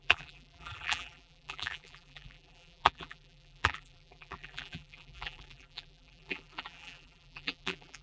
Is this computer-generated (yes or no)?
yes